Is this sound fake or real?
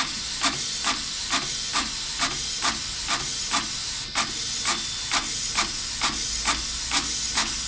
real